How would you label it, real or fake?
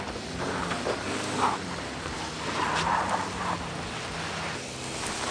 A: real